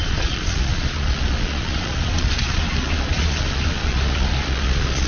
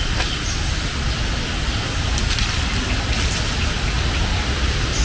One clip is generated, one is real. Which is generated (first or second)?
first